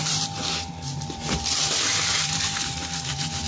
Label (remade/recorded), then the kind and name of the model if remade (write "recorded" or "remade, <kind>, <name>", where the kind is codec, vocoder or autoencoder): remade, vocoder, BigVGAN v2